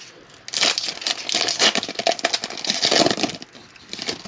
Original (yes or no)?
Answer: yes